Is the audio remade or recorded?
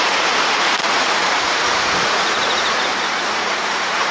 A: remade